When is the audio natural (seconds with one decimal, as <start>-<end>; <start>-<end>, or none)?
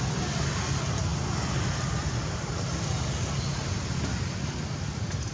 0.0-5.3